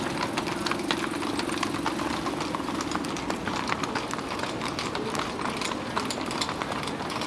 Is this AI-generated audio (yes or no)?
no